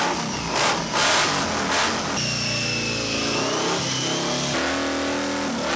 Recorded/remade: recorded